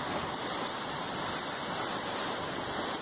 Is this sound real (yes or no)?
no